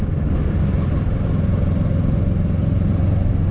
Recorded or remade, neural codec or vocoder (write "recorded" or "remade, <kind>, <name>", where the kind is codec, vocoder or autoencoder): recorded